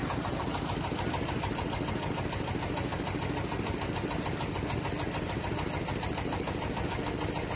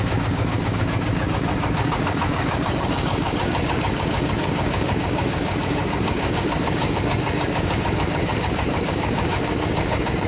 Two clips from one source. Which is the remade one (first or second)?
second